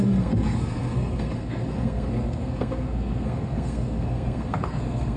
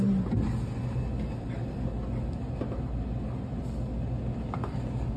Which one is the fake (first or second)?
first